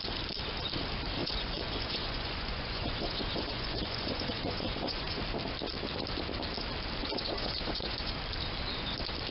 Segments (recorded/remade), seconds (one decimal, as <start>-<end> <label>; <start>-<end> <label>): 0.0-1.2 recorded; 1.2-5.2 remade; 5.2-7.0 recorded; 7.0-8.2 remade; 8.2-9.3 recorded